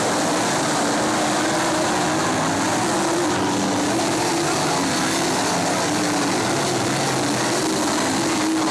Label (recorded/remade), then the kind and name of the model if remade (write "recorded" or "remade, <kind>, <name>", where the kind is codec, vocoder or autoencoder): recorded